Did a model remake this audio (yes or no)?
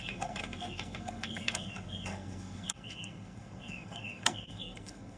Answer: yes